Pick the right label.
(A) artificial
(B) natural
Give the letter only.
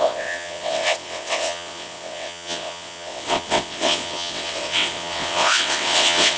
A